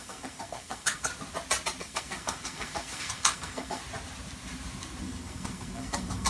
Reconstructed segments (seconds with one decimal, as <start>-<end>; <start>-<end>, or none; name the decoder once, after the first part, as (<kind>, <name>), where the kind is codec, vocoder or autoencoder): 0.0-1.1 (codec, SNAC); 1.8-3.8; 5.0-6.3